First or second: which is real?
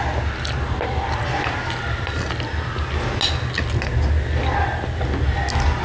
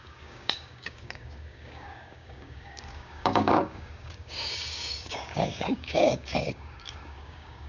first